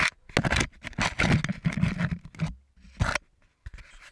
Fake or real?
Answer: real